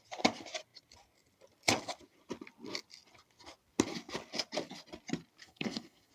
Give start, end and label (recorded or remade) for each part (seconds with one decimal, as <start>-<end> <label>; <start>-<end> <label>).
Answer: 0.0-5.4 recorded; 5.4-6.1 remade